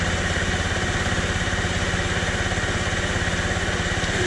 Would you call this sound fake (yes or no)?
no